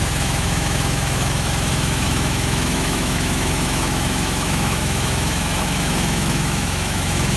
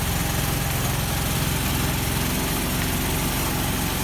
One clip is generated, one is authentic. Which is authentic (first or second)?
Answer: second